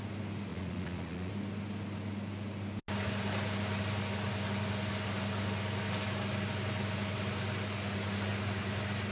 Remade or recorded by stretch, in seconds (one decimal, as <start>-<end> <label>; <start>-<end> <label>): 0.0-0.5 recorded; 0.5-1.3 remade; 1.3-9.1 recorded